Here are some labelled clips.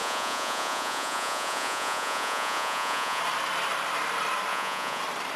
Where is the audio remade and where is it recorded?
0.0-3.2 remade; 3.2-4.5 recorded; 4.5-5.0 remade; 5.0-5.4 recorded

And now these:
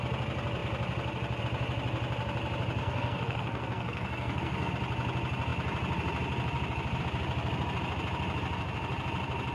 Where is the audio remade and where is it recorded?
0.0-2.8 recorded; 2.8-4.7 remade; 4.7-9.5 recorded

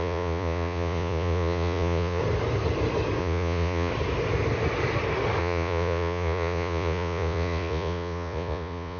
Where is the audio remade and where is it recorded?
0.0-2.2 remade; 2.2-3.2 recorded; 3.2-3.9 remade; 3.9-5.4 recorded; 5.4-9.0 remade

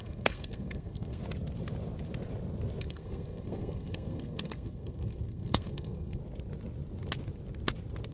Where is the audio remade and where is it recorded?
0.0-1.2 remade; 1.2-2.8 recorded; 2.8-6.2 remade; 6.2-8.1 recorded